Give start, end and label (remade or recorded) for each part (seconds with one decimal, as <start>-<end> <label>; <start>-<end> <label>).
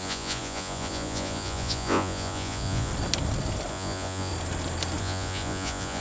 0.0-2.9 remade; 2.9-3.7 recorded; 3.7-4.3 remade; 4.3-5.0 recorded; 5.0-6.0 remade